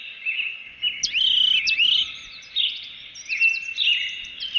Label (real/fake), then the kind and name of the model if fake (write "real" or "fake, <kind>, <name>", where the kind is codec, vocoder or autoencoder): real